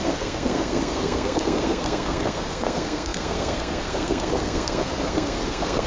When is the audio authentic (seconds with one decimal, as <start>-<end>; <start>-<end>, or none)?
none